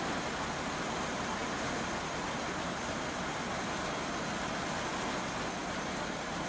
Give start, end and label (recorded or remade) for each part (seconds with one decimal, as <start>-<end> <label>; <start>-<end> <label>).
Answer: 0.0-6.5 recorded